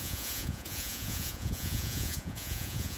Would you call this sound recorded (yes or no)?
no